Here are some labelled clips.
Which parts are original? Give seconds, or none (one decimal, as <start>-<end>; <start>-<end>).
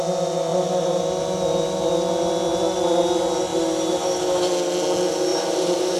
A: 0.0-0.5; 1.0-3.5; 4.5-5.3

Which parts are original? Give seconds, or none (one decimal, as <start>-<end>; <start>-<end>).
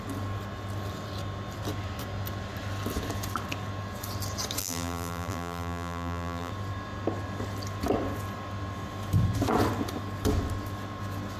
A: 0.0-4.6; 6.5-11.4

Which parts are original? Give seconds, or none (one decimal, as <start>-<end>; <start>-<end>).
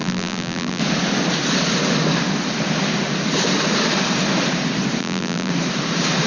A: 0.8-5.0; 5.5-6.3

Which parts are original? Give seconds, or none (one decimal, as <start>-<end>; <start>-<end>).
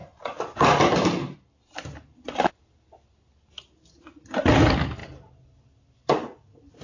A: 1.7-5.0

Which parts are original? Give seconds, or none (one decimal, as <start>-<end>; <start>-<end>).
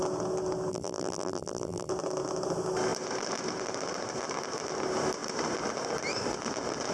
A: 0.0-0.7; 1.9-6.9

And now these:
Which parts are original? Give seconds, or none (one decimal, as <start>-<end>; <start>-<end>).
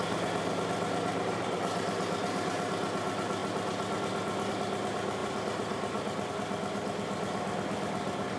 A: 0.0-5.2; 6.3-8.4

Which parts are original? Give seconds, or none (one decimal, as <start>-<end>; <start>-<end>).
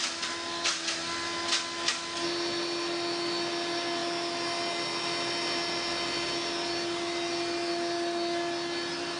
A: 0.0-9.2